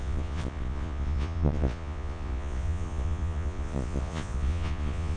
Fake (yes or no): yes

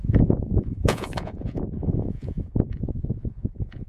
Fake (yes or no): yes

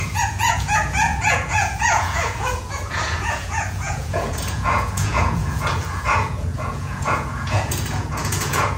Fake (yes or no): yes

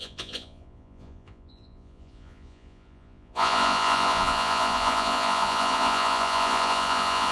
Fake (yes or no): yes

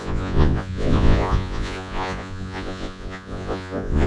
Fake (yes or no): yes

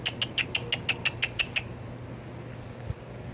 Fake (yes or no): no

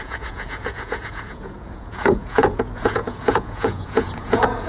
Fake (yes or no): yes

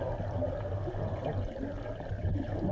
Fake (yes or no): no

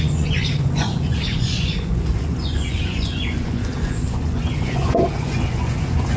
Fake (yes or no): yes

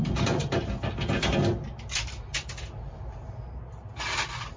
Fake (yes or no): no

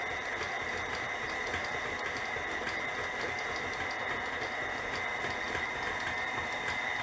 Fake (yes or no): no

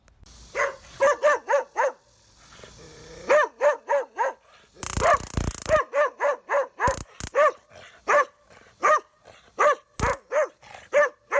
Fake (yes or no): no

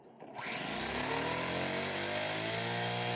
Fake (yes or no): no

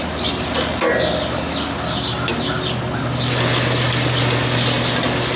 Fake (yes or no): no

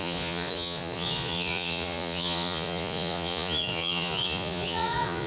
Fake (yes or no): yes